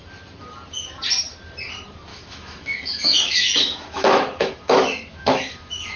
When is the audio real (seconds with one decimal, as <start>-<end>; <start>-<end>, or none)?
0.0-2.1

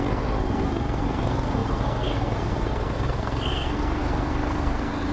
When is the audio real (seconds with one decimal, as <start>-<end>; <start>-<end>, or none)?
none